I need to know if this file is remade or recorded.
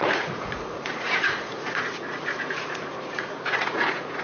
remade